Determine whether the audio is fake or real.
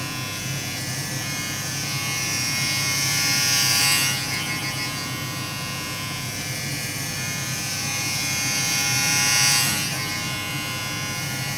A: fake